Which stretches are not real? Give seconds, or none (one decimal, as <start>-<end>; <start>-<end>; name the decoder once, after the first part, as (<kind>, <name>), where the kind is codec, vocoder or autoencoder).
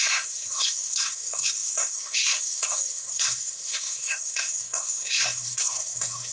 0.0-6.3 (codec, SNAC)